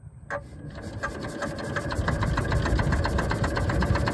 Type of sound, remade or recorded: recorded